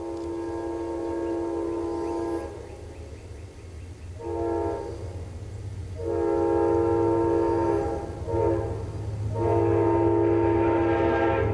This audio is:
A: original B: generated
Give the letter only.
A